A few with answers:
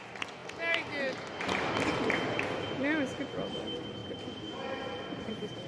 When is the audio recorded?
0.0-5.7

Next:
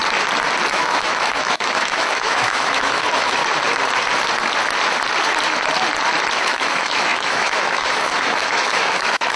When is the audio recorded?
0.0-0.7; 3.4-6.4

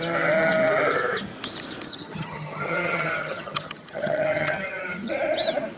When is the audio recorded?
0.0-1.9; 5.1-5.8

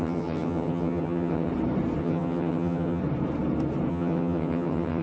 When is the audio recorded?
1.5-2.0; 3.0-3.9

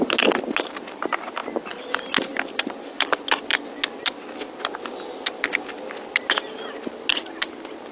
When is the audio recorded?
0.0-7.9